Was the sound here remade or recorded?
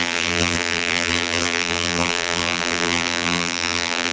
remade